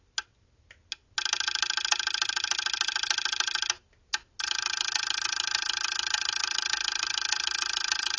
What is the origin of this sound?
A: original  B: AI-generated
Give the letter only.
A